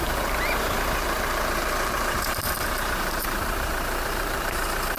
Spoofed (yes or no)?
yes